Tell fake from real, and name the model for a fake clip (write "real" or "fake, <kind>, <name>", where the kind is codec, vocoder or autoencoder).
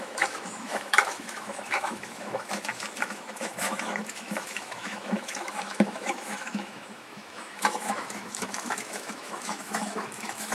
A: fake, autoencoder, DAC-VAE